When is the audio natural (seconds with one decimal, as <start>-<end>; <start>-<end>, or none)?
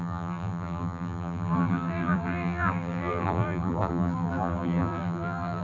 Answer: none